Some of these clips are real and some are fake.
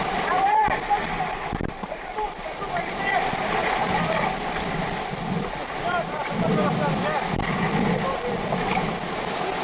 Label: real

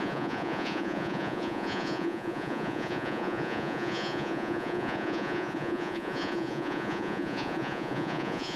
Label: fake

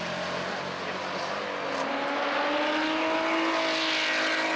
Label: real